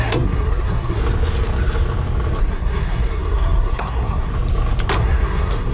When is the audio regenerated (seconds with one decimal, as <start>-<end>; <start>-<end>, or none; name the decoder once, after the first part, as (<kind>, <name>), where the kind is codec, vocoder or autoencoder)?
0.0-1.0 (codec, SNAC); 2.4-4.3; 5.0-5.7